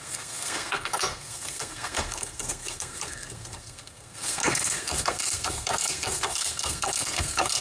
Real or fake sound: fake